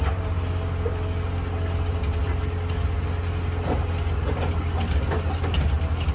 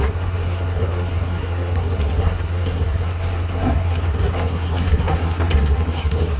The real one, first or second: first